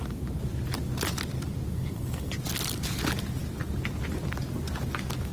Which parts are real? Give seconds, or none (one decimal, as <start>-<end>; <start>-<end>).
0.0-1.7; 2.3-5.3